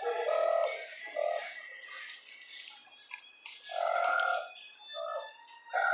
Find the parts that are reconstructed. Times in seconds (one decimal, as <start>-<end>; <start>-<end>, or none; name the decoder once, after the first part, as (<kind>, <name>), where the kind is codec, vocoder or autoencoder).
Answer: none